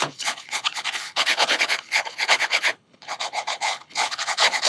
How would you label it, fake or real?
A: fake